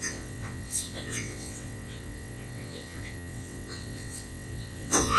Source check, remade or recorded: remade